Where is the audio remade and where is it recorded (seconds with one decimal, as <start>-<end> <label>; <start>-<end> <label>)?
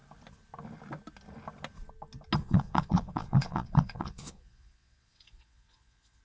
0.0-2.4 recorded; 2.4-6.2 remade